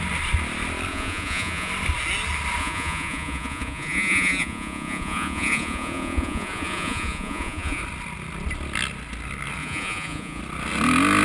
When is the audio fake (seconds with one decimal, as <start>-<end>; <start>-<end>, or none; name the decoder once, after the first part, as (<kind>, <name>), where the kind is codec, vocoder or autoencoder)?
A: 0.9-1.7 (vocoder, Vocos); 2.6-7.8; 9.6-10.4